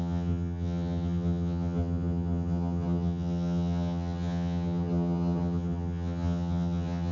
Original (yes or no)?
no